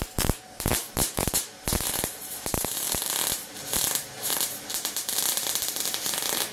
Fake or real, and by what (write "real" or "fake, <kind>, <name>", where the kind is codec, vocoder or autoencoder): fake, vocoder, BigVGAN v2